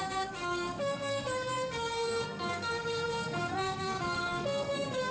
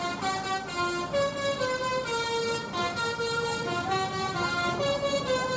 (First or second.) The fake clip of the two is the first